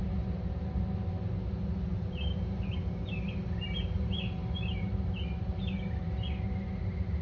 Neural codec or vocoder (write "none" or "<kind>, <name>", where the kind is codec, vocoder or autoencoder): none